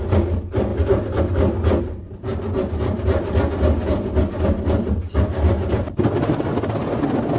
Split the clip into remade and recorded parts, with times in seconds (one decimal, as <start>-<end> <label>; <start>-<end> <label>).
0.0-7.4 recorded